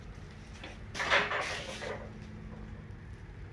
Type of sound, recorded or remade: recorded